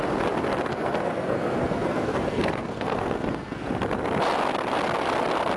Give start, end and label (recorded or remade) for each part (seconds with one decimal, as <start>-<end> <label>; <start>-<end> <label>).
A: 0.0-0.7 recorded; 0.7-3.6 remade; 3.6-5.6 recorded